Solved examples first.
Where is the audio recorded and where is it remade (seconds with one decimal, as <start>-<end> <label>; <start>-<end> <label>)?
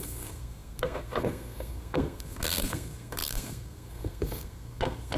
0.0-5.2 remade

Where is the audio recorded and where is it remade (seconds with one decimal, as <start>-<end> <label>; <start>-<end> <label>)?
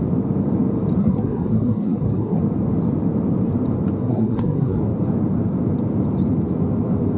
0.0-1.0 recorded; 1.0-2.4 remade; 2.4-4.0 recorded; 4.0-4.8 remade; 4.8-7.2 recorded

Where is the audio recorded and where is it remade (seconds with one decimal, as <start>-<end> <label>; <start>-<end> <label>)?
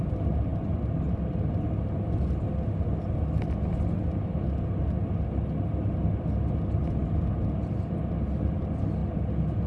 0.0-9.7 recorded